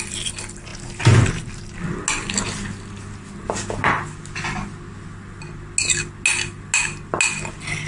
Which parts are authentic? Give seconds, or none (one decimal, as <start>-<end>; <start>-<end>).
0.0-7.9